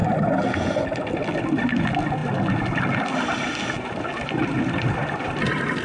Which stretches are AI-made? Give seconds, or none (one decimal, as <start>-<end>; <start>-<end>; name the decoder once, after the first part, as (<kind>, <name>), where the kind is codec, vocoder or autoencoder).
none

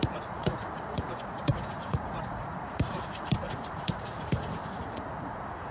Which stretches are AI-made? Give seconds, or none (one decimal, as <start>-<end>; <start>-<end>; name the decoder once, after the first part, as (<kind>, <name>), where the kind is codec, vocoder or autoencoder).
0.0-5.7 (vocoder, Vocos)

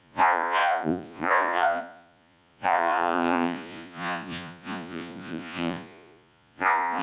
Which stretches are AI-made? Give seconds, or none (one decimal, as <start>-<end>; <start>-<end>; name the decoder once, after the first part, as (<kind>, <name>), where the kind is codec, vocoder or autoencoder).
0.0-7.0 (vocoder, Vocos)

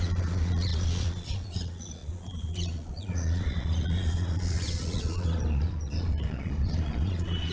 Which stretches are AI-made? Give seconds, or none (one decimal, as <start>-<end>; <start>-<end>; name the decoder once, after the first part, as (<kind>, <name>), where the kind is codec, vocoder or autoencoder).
0.0-7.5 (vocoder, Vocos)